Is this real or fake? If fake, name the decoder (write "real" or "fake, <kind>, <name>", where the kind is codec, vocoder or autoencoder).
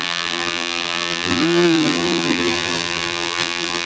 fake, vocoder, BigVGAN v2